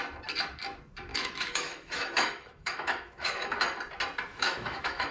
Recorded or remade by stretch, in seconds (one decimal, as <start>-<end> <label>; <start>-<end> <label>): 0.0-1.1 recorded; 1.1-3.6 remade; 3.6-4.3 recorded; 4.3-5.1 remade